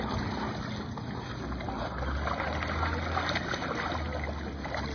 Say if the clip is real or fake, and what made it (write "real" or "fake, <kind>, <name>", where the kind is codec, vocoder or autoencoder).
real